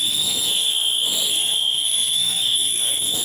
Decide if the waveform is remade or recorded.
remade